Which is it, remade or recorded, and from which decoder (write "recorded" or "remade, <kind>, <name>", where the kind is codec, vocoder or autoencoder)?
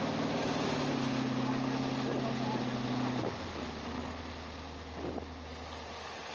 recorded